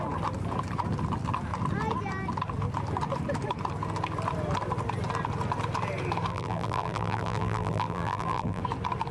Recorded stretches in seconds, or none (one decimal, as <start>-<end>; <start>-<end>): 0.0-6.3; 8.6-9.1